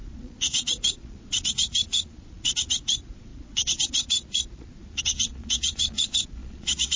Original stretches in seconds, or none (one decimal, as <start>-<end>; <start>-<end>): none